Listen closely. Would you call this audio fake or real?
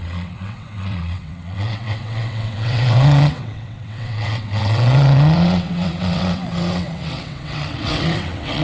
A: fake